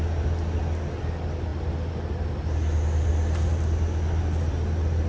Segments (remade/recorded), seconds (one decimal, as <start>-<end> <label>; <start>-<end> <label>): 0.0-5.1 recorded

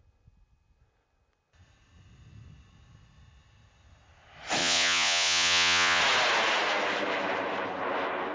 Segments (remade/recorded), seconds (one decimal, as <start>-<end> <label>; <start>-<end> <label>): 0.0-4.6 recorded; 4.6-6.0 remade; 6.0-8.3 recorded

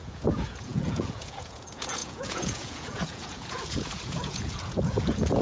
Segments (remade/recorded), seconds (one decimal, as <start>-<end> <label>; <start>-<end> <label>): 0.0-5.4 remade

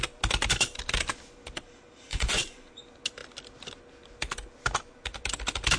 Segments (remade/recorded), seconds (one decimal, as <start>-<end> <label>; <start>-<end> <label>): 0.0-2.1 recorded; 2.1-2.7 remade; 2.7-5.8 recorded

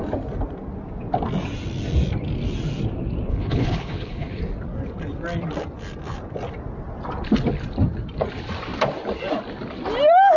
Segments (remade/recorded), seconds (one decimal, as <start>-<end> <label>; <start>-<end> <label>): 0.0-3.3 recorded; 3.3-4.4 remade; 4.4-10.4 recorded

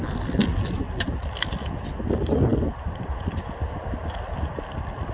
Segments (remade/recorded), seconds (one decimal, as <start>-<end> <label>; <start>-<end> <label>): 0.0-5.1 recorded

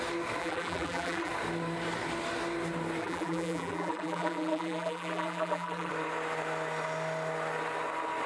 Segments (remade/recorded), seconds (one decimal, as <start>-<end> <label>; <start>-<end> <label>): 0.0-0.4 recorded; 0.4-1.3 remade; 1.3-3.0 recorded; 3.0-5.9 remade; 5.9-8.3 recorded